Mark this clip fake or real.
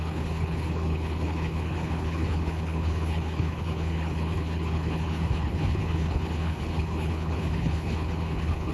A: fake